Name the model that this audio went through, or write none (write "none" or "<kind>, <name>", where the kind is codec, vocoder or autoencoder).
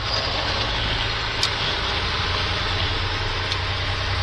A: none